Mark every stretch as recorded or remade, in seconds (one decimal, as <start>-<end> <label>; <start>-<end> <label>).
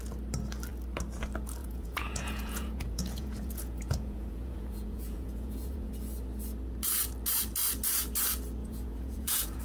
0.0-1.6 recorded; 1.6-5.9 remade; 5.9-8.6 recorded; 8.6-9.6 remade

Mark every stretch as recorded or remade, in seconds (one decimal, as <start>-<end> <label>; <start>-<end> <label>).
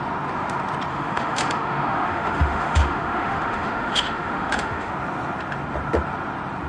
0.0-0.9 recorded; 0.9-4.9 remade; 4.9-6.7 recorded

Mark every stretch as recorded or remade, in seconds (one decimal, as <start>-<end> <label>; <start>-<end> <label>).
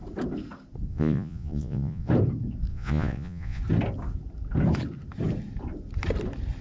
0.0-0.9 recorded; 0.9-2.1 remade; 2.1-2.7 recorded; 2.7-3.6 remade; 3.6-6.6 recorded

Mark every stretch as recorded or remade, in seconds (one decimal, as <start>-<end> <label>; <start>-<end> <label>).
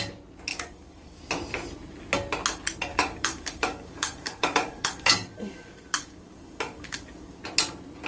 0.0-0.5 recorded; 0.5-1.2 remade; 1.2-2.9 recorded; 2.9-7.4 remade; 7.4-8.1 recorded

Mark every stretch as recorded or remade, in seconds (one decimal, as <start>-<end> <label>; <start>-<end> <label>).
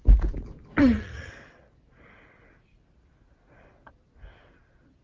0.0-0.8 recorded; 0.8-1.3 remade; 1.3-5.0 recorded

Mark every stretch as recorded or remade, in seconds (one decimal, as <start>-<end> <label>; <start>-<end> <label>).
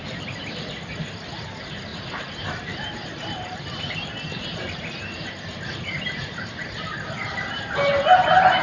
0.0-1.9 recorded; 1.9-4.8 remade; 4.8-8.6 recorded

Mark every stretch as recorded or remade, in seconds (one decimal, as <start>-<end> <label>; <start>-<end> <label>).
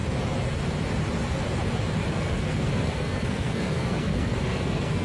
0.0-2.1 recorded; 2.1-5.0 remade